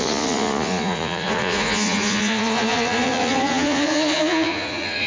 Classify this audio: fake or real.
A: fake